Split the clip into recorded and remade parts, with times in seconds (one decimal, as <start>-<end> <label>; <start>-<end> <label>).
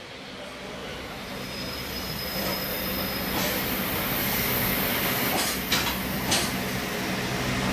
0.0-7.7 recorded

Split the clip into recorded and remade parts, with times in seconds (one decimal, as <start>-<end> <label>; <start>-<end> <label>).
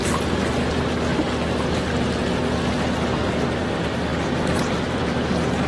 0.0-5.7 recorded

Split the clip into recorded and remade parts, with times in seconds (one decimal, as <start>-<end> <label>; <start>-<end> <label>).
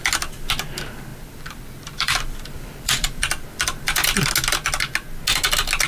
0.0-1.1 recorded; 1.1-4.3 remade; 4.3-5.9 recorded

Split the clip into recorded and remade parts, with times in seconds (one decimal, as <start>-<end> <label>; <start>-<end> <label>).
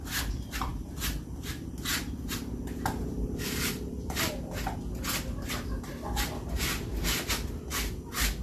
0.0-0.7 recorded; 0.7-2.0 remade; 2.0-3.0 recorded; 3.0-4.3 remade; 4.3-5.9 recorded; 5.9-6.9 remade; 6.9-8.4 recorded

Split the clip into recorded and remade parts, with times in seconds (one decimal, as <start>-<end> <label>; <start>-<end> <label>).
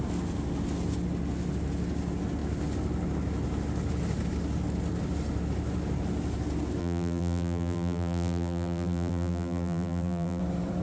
0.0-6.8 recorded; 6.8-10.4 remade; 10.4-10.8 recorded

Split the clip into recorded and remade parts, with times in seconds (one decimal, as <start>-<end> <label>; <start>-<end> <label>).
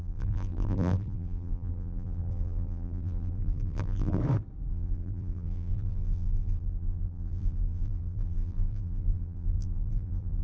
0.0-4.2 remade; 4.2-4.7 recorded; 4.7-10.4 remade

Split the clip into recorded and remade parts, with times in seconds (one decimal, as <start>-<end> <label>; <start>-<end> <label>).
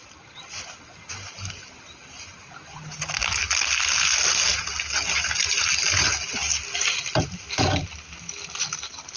0.0-2.0 recorded; 2.0-3.2 remade; 3.2-9.2 recorded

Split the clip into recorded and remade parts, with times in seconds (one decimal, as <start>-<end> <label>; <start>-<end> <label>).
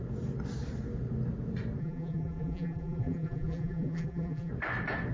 0.0-1.8 recorded; 1.8-4.5 remade; 4.5-5.1 recorded